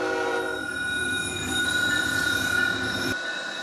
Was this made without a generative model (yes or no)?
no